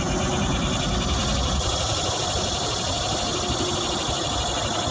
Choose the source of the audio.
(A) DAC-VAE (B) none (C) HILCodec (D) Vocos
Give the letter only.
B